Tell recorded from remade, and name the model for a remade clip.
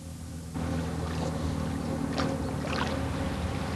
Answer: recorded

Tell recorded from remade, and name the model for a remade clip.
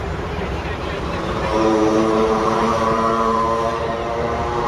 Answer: remade, vocoder, BigVGAN v2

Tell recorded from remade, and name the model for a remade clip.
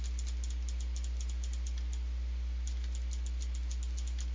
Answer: recorded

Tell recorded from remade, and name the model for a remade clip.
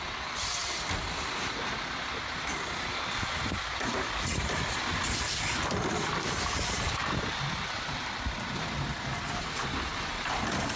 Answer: remade, vocoder, BigVGAN v2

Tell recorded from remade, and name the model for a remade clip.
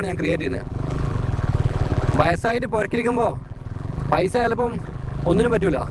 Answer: remade, vocoder, BigVGAN v2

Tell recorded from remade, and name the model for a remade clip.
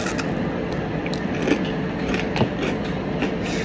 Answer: remade, vocoder, BigVGAN v2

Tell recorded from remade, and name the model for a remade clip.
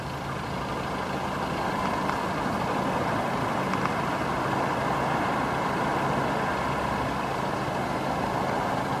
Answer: recorded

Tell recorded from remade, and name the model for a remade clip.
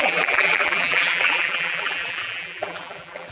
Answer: remade, vocoder, BigVGAN v2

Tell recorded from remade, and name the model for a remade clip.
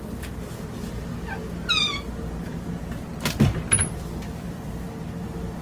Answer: recorded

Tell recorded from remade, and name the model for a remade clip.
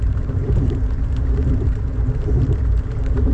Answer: remade, vocoder, BigVGAN v2